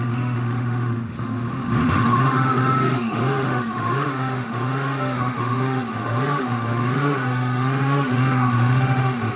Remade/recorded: remade